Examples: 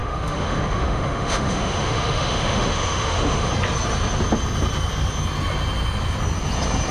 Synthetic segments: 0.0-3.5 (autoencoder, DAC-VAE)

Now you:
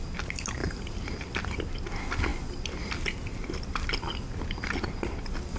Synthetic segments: 0.6-1.5 (vocoder, BigVGAN v2)

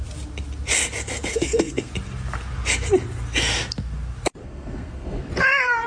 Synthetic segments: 1.3-1.9 (codec, SNAC); 4.4-5.3

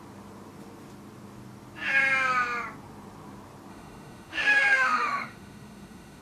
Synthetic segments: 3.7-6.2 (autoencoder, DAC-VAE)